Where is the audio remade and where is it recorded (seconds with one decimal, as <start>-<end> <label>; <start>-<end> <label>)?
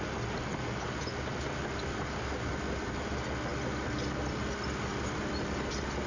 0.0-6.1 recorded